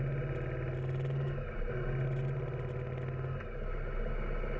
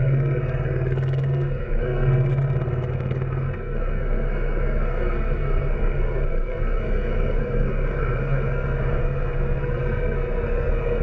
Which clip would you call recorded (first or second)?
first